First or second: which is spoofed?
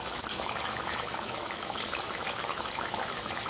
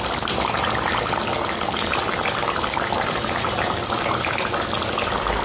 first